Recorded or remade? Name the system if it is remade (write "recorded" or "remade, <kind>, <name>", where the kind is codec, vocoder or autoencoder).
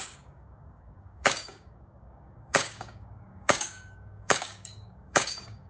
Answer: remade, codec, DAC